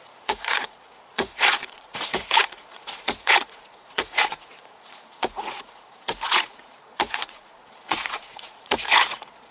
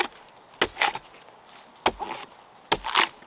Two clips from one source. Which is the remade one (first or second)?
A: first